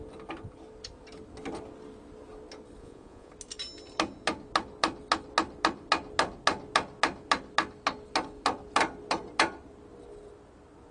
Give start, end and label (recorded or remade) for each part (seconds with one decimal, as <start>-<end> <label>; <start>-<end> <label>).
0.0-2.8 recorded; 2.8-3.3 remade; 3.3-10.9 recorded